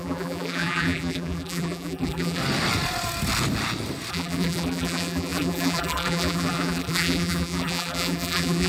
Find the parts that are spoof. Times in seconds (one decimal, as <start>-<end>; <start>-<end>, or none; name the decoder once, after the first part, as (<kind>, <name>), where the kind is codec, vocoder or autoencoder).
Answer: 0.0-2.4 (vocoder, BigVGAN v2); 4.1-8.7